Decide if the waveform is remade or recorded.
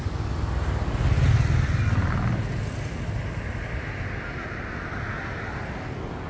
recorded